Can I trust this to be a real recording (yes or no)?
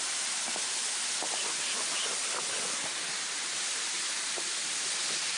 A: yes